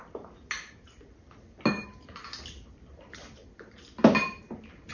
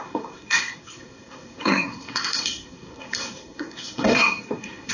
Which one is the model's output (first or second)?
second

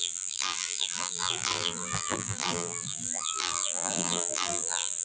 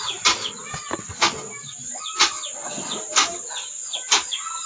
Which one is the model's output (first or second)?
first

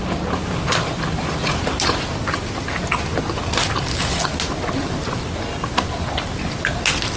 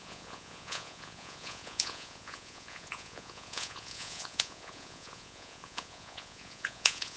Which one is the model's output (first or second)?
second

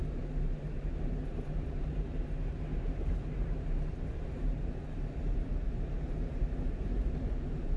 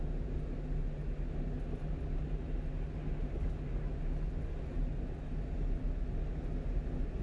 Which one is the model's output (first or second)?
first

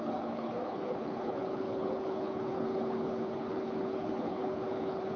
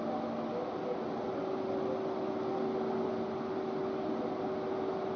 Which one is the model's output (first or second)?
first